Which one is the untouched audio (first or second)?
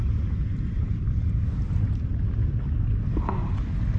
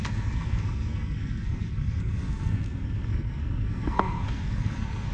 first